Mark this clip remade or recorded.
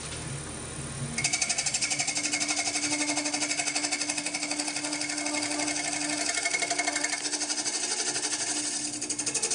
recorded